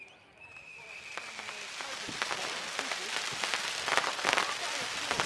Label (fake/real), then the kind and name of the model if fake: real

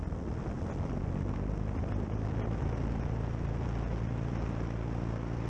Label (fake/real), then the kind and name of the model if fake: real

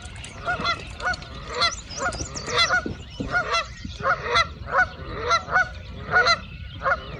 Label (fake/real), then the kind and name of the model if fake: fake, vocoder, BigVGAN v2